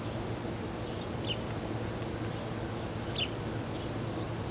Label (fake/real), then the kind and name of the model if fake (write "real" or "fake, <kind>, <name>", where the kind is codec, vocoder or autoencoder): real